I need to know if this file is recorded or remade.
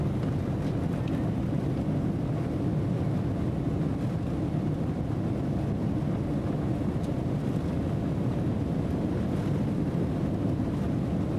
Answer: recorded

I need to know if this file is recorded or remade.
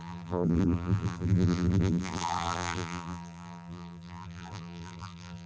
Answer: remade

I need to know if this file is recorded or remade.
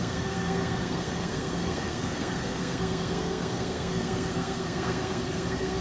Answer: remade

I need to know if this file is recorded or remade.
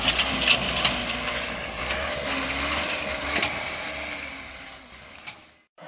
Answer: recorded